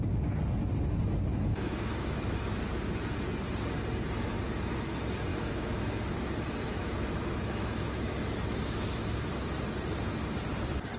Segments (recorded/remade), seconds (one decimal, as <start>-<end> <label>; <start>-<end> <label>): 0.0-1.3 recorded; 1.3-2.6 remade; 2.6-5.3 recorded; 5.3-6.0 remade; 6.0-6.7 recorded; 6.7-9.3 remade; 9.3-11.0 recorded